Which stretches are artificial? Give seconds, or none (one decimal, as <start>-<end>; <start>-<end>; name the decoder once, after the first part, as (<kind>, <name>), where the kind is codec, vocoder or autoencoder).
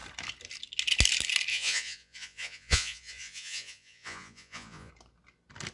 1.5-4.9 (vocoder, Vocos)